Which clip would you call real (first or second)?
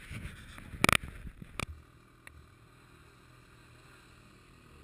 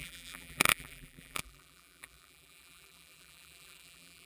first